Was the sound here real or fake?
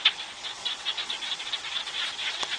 fake